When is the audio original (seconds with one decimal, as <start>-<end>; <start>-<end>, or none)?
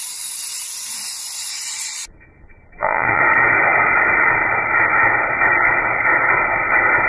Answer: 0.0-1.5; 3.2-7.1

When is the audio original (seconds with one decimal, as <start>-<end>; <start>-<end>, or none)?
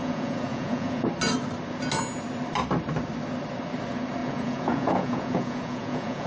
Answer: 1.1-4.2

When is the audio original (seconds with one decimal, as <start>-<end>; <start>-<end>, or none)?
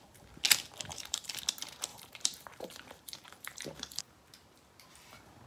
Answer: 0.0-0.9; 1.4-1.9; 4.0-5.5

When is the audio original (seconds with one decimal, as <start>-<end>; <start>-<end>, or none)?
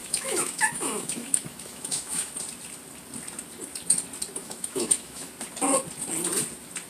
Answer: 2.3-4.4; 5.3-6.9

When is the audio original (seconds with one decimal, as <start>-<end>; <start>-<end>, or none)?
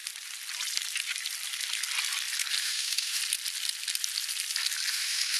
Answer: 0.0-2.6; 3.2-4.9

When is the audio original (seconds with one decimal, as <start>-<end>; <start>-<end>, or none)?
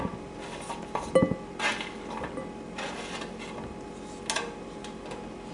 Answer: 0.0-5.5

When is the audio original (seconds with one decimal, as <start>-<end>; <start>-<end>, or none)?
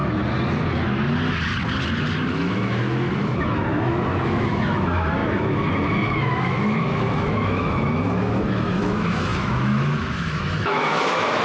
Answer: 0.0-2.3